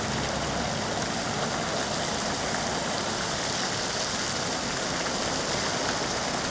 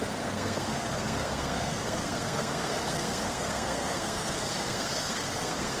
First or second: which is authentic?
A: first